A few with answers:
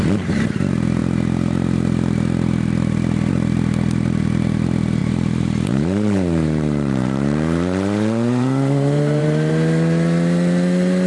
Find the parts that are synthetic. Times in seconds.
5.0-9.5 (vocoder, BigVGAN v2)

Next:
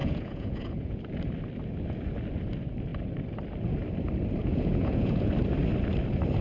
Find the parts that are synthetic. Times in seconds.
0.0-1.0 (vocoder, Vocos); 4.4-5.3

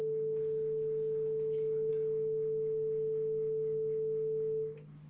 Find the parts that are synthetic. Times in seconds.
none

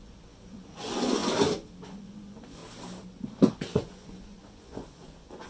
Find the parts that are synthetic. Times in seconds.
0.0-1.2 (vocoder, Vocos); 1.8-2.6; 3.5-5.5

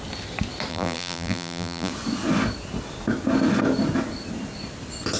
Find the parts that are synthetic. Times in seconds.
0.7-1.9 (vocoder, BigVGAN v2)

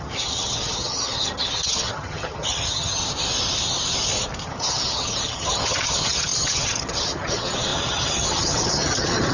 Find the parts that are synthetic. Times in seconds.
0.0-3.0 (vocoder, HiFi-GAN); 4.4-9.3